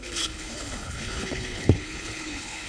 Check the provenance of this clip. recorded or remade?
remade